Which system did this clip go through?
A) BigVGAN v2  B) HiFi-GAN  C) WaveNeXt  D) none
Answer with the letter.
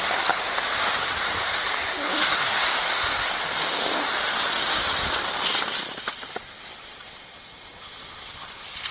D